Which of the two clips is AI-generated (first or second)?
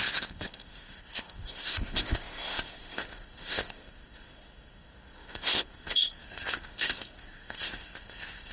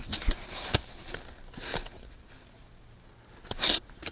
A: first